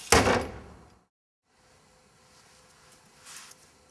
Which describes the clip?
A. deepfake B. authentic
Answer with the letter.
B